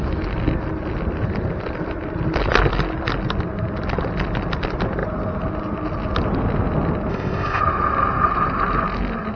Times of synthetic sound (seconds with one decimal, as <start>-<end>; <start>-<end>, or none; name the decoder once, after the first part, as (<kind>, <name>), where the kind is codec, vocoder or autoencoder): 7.1-7.6 (codec, ZipCodec)